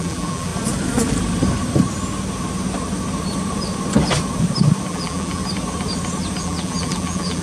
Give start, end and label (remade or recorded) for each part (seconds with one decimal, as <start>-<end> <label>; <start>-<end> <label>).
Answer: 0.0-0.5 remade; 0.5-4.9 recorded; 4.9-5.4 remade; 5.4-6.4 recorded; 6.4-7.4 remade